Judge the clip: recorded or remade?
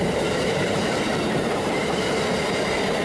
remade